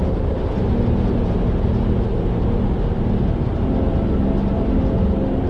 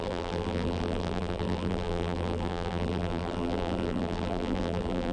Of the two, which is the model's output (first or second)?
second